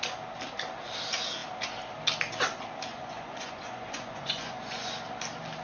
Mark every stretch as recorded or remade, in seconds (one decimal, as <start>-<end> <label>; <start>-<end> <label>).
0.0-2.9 recorded; 2.9-4.9 remade; 4.9-5.6 recorded